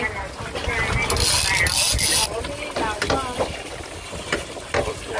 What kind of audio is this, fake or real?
real